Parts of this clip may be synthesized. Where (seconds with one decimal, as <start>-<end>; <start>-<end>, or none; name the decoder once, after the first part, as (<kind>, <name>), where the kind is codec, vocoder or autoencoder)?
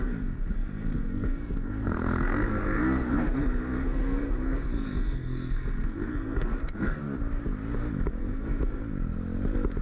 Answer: 0.0-7.0 (codec, SNAC); 8.2-8.8